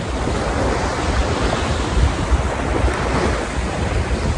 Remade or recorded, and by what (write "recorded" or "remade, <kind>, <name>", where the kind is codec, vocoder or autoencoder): recorded